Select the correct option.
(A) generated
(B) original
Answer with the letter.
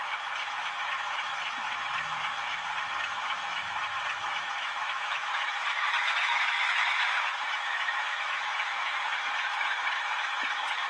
A